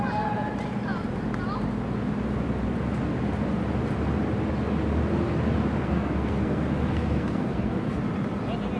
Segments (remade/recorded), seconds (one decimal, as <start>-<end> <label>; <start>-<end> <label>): 0.0-5.8 recorded; 5.8-8.0 remade; 8.0-8.8 recorded